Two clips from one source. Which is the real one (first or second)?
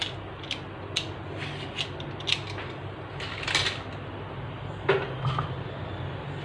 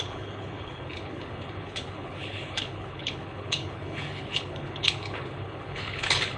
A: first